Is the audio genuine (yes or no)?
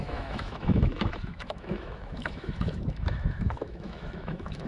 no